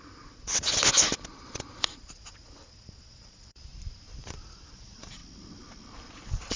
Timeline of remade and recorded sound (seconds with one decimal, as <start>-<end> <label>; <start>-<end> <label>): 0.0-0.5 remade; 0.5-1.4 recorded; 1.4-3.7 remade; 3.7-4.2 recorded; 4.2-5.2 remade; 5.2-6.1 recorded; 6.1-6.6 remade